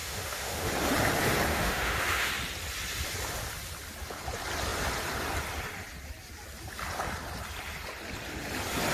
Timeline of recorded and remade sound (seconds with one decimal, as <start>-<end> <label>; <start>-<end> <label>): 0.0-0.7 remade; 0.7-1.5 recorded; 1.5-2.3 remade; 2.3-8.9 recorded

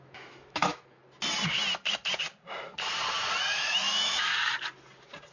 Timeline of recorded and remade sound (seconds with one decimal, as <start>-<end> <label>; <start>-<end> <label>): 0.0-1.0 remade; 1.0-3.4 recorded; 3.4-4.3 remade; 4.3-5.3 recorded

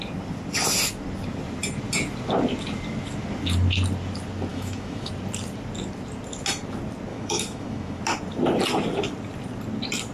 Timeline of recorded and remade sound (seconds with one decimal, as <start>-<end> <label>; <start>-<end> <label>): 0.0-4.5 recorded; 4.5-5.1 remade; 5.1-7.1 recorded; 7.1-8.0 remade; 8.0-10.1 recorded

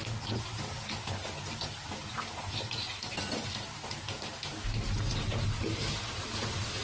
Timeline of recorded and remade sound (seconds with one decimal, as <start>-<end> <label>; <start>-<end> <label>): 0.0-6.8 recorded

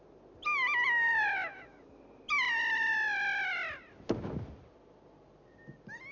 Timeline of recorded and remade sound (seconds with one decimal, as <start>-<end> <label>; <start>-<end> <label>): 0.0-1.3 recorded; 1.3-2.0 remade; 2.0-6.1 recorded

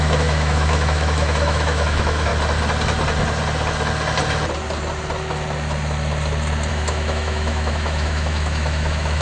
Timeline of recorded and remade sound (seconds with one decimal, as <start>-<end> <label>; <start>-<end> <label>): 0.0-2.3 remade; 2.3-6.7 recorded; 6.7-9.2 remade

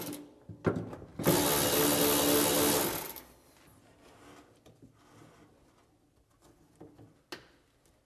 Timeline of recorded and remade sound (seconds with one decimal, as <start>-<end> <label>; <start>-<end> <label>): 0.0-8.1 recorded

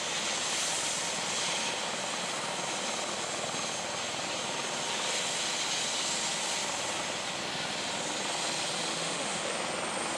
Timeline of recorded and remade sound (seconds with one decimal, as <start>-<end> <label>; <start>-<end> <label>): 0.0-8.9 recorded; 8.9-9.5 remade; 9.5-10.2 recorded